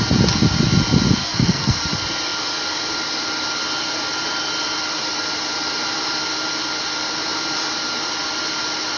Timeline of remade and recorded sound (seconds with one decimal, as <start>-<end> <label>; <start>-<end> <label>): 0.0-1.2 recorded; 1.2-1.9 remade; 1.9-9.0 recorded